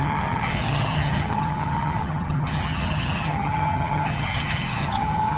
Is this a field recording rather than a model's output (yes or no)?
no